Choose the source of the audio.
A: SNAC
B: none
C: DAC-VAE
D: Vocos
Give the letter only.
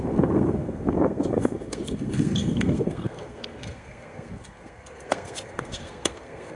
A